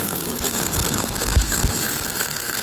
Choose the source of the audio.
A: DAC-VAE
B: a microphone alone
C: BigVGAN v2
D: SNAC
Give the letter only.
D